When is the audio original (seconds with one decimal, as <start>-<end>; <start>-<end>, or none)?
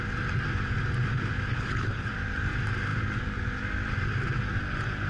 0.0-1.5; 2.1-5.1